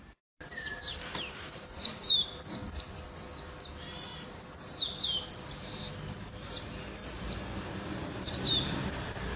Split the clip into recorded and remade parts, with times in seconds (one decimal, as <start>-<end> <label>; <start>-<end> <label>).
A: 0.0-0.7 recorded; 0.7-2.4 remade; 2.4-4.1 recorded; 4.1-5.8 remade; 5.8-7.0 recorded; 7.0-8.4 remade; 8.4-9.4 recorded